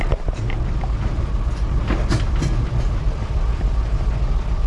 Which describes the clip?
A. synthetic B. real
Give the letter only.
A